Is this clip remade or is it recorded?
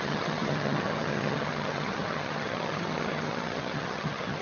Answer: remade